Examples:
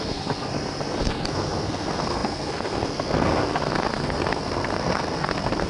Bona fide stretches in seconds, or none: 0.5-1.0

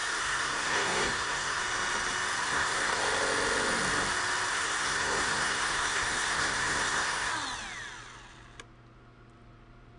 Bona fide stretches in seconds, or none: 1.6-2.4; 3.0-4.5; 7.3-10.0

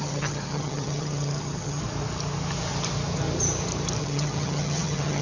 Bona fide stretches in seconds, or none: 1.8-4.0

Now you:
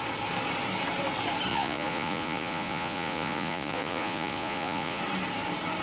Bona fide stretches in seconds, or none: 0.0-1.5; 5.0-5.8

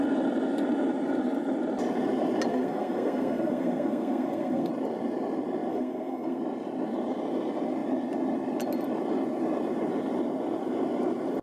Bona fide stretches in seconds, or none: 0.0-2.5; 4.7-5.7; 6.4-11.4

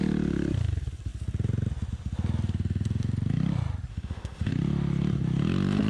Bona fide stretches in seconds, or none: 0.0-3.9; 4.5-5.9

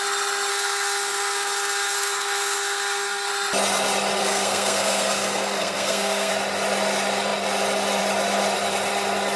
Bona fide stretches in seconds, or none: 0.0-0.5; 3.3-4.2; 6.3-9.4

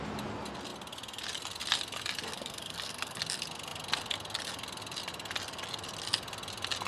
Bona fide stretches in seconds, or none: 0.0-2.3; 3.2-6.9